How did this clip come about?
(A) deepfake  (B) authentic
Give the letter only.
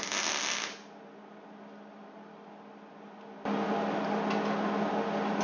B